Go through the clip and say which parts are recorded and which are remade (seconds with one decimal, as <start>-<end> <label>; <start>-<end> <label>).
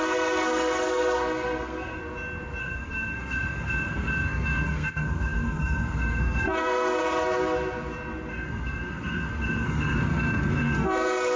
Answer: 0.0-2.0 remade; 2.0-2.6 recorded; 2.6-7.0 remade; 7.0-8.3 recorded; 8.3-11.4 remade